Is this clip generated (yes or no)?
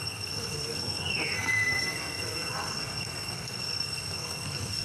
yes